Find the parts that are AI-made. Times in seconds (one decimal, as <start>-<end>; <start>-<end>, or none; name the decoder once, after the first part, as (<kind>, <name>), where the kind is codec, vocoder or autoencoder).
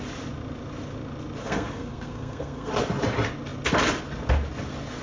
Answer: 1.4-2.7 (codec, SNAC)